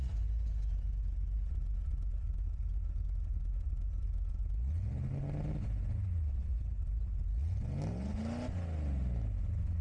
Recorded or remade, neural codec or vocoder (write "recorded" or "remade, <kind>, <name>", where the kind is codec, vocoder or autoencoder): recorded